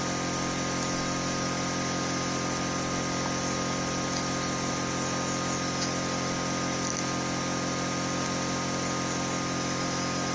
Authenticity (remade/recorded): recorded